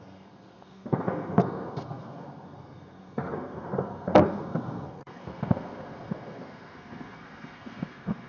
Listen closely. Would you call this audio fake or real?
fake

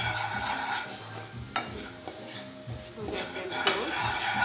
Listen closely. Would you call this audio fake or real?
real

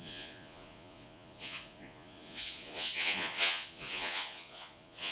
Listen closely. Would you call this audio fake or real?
fake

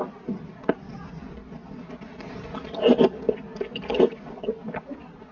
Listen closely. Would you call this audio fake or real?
real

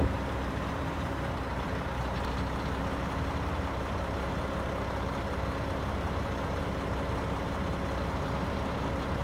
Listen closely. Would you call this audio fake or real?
fake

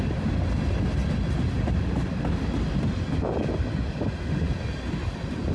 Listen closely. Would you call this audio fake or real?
real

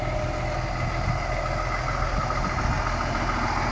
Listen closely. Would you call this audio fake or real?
real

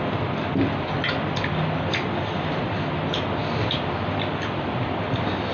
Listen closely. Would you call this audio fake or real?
real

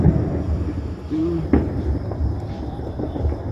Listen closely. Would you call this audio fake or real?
real